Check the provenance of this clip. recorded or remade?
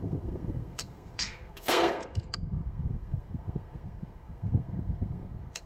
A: remade